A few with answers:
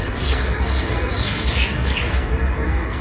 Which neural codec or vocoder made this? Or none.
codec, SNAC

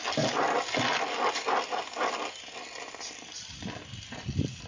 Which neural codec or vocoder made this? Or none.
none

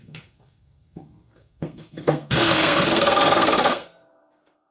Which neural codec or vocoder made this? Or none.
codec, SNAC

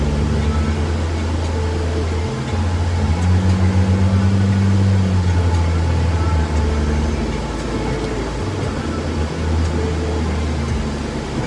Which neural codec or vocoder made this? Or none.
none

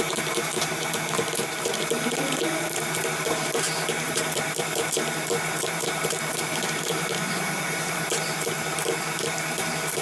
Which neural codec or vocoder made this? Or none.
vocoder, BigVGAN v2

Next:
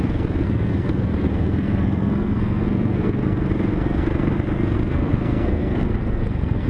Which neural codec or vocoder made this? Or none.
codec, SNAC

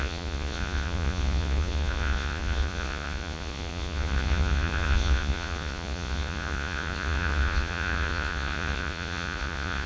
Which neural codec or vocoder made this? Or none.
vocoder, Vocos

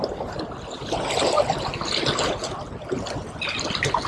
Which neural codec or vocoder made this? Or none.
none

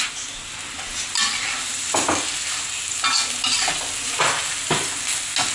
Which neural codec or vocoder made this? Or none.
none